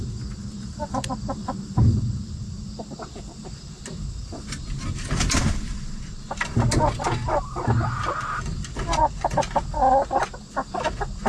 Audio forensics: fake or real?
real